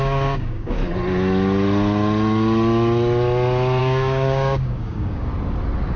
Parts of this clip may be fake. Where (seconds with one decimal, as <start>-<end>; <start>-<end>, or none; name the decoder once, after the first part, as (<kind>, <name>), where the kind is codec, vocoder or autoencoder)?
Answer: 0.0-0.8 (codec, DAC); 3.8-5.3